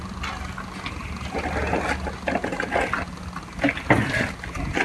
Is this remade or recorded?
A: recorded